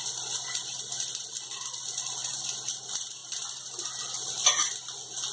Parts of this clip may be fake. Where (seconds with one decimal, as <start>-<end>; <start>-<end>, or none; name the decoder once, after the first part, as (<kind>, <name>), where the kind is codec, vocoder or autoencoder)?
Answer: none